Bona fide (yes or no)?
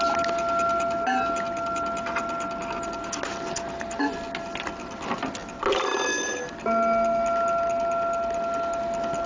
yes